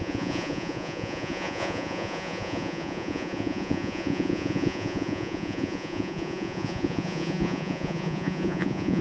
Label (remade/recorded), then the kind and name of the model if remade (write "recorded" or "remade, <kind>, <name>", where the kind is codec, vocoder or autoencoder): remade, vocoder, Vocos